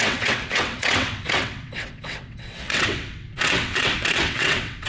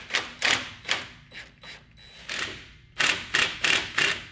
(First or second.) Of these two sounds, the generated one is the first